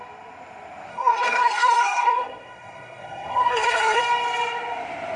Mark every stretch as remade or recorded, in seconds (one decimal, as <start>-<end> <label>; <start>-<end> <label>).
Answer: 0.0-0.9 recorded; 0.9-4.0 remade; 4.0-5.2 recorded

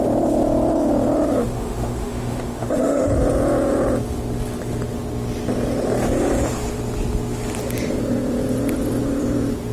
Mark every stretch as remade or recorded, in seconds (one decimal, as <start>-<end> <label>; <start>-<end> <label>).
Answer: 0.0-1.4 recorded; 1.4-3.1 remade; 3.1-9.7 recorded

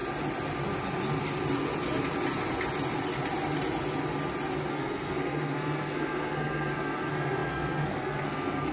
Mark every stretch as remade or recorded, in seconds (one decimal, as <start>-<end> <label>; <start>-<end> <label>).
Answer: 0.0-4.7 recorded; 4.7-8.7 remade

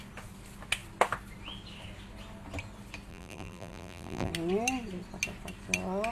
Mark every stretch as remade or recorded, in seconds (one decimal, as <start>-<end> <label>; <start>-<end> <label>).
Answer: 0.0-3.1 recorded; 3.1-4.3 remade; 4.3-6.1 recorded

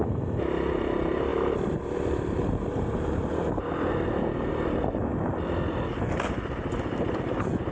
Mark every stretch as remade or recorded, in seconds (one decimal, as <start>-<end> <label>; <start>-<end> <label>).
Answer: 0.0-1.3 recorded; 1.3-3.6 remade; 3.6-7.7 recorded

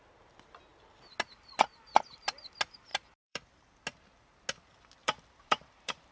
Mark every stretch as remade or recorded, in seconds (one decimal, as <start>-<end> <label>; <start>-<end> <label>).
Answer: 0.0-2.9 recorded; 2.9-3.6 remade; 3.6-5.0 recorded; 5.0-6.1 remade

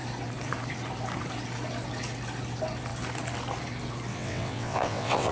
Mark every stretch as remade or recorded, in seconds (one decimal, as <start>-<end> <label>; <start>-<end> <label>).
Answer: 0.0-4.1 recorded; 4.1-5.3 remade